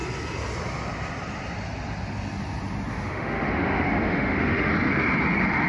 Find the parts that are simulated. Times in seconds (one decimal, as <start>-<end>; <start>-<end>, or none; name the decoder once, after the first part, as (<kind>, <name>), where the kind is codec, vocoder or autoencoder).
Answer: 2.9-4.7 (autoencoder, DAC-VAE)